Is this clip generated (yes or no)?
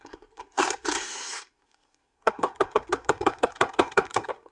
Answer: yes